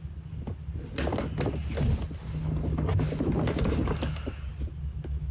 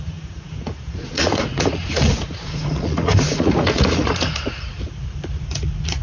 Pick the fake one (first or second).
second